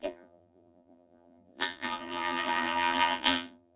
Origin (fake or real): fake